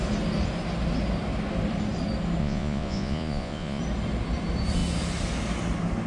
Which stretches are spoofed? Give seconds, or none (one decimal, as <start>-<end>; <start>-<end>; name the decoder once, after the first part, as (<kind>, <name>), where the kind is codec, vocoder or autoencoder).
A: 2.4-3.8 (vocoder, Vocos)